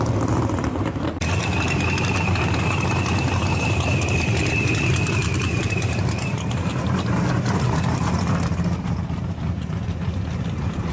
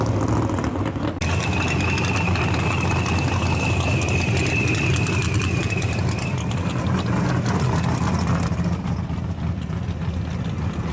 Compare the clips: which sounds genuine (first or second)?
second